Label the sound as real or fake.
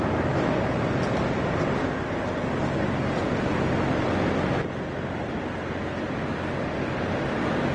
real